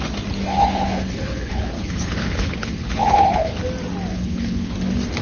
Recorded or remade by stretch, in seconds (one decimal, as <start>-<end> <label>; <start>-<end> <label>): 0.0-0.5 recorded; 0.5-3.6 remade; 3.6-4.1 recorded; 4.1-4.7 remade; 4.7-5.2 recorded

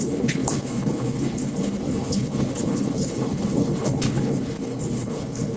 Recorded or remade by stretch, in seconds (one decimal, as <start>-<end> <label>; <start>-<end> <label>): 0.0-5.6 remade